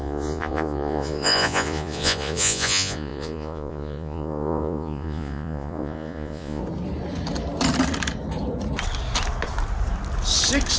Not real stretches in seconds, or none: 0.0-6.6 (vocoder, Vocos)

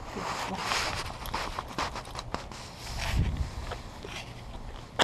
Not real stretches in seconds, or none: none

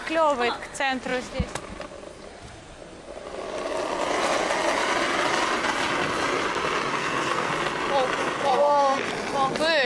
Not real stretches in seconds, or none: 6.9-7.5 (codec, SNAC); 8.2-9.1